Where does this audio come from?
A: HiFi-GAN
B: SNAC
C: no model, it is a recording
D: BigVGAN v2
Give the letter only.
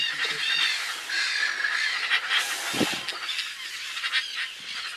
C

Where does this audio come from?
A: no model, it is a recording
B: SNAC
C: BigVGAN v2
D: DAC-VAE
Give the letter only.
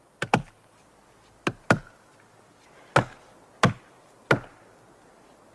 A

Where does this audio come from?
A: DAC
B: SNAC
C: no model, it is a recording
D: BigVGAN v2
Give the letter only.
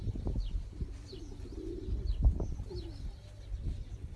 D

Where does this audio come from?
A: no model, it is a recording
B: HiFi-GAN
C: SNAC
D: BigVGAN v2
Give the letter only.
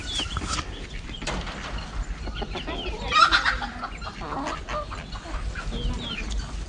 A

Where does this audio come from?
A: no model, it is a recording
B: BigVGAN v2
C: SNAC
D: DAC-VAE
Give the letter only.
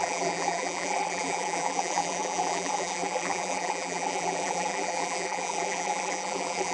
B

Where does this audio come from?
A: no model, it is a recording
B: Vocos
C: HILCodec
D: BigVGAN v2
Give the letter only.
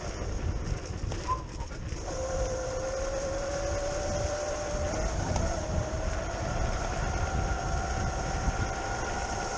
A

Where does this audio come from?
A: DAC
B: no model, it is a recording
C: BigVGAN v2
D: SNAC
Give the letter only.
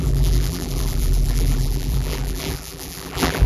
C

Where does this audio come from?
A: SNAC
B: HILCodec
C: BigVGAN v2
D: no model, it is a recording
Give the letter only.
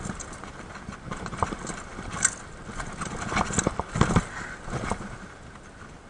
D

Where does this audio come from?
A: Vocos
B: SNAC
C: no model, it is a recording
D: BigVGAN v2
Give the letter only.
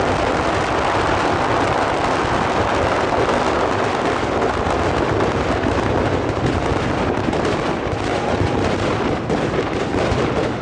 C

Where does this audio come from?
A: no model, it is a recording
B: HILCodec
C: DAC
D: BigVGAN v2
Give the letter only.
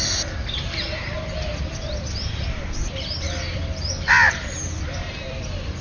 D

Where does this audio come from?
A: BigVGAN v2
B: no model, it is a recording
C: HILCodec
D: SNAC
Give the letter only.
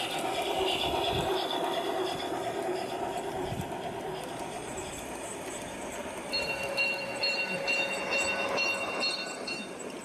A